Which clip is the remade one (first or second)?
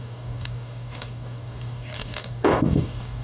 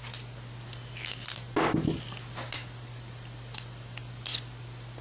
first